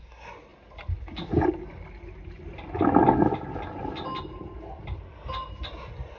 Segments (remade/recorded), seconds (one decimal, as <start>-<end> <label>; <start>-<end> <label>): 0.0-6.2 recorded